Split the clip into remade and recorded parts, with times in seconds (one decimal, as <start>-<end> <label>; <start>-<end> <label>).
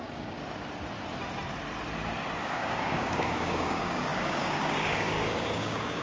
0.0-0.4 remade; 0.4-2.4 recorded; 2.4-6.0 remade